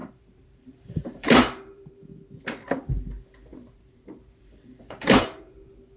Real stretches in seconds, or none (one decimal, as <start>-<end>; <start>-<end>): 1.9-3.5; 5.5-6.0